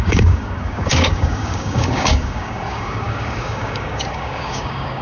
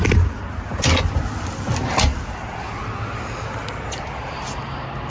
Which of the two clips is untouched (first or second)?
second